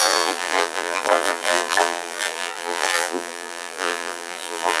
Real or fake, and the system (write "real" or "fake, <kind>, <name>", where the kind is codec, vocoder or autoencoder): fake, vocoder, BigVGAN v2